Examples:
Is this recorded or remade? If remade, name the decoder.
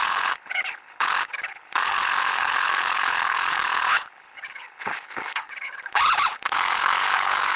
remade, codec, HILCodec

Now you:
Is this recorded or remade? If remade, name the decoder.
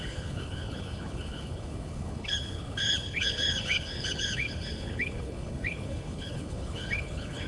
remade, codec, HILCodec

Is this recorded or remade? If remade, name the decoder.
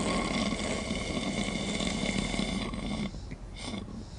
recorded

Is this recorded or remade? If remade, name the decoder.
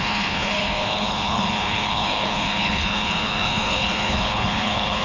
remade, codec, HILCodec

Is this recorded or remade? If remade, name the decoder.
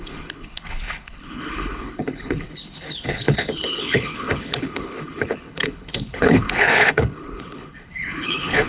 remade, codec, HILCodec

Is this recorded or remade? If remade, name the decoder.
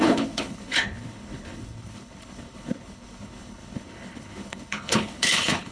remade, codec, HILCodec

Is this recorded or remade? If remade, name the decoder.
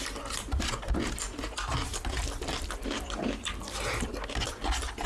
recorded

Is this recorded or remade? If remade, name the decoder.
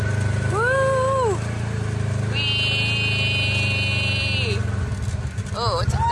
recorded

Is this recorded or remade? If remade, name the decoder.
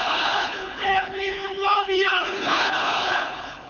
remade, codec, HILCodec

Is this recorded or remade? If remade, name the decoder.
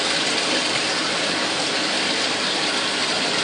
recorded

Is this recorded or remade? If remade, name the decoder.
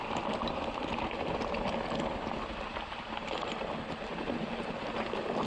recorded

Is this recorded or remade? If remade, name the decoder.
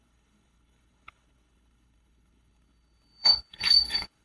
remade, codec, HILCodec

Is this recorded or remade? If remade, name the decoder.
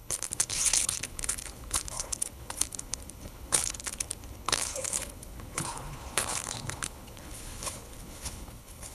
remade, codec, HILCodec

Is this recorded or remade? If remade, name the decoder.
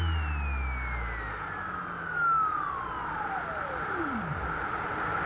recorded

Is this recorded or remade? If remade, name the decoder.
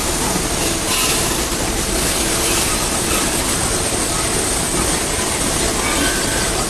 recorded